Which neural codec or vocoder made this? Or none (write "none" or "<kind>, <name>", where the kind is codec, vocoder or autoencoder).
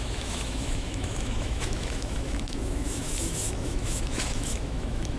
autoencoder, DAC-VAE